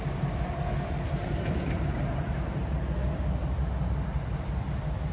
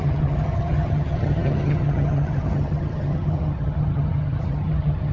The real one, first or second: first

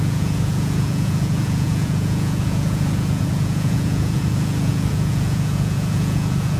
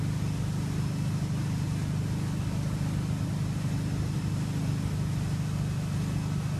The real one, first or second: second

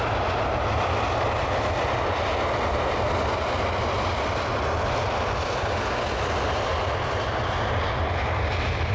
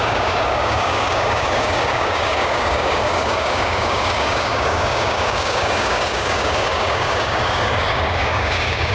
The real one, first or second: first